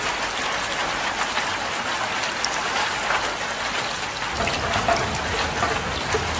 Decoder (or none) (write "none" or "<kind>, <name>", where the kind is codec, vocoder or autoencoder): none